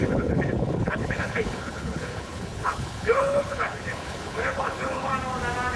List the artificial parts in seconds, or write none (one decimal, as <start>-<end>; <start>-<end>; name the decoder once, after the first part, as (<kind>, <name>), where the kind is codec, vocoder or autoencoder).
0.0-5.1 (codec, HILCodec)